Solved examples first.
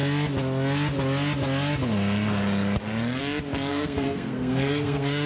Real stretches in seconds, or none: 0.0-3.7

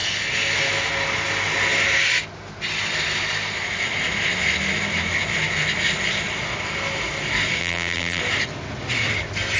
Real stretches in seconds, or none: 0.0-7.6; 8.2-9.6

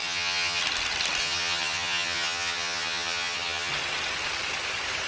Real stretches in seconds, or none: 0.6-1.2; 3.7-5.1

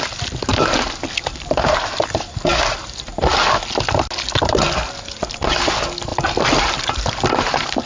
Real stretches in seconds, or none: 0.0-0.5; 3.3-7.9

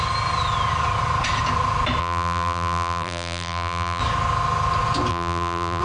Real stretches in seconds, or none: 0.0-2.0; 4.0-5.1

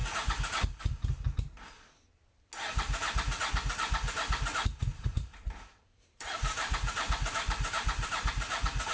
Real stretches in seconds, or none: 0.0-4.8